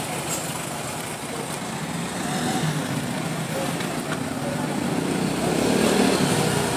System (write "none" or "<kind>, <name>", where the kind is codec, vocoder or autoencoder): none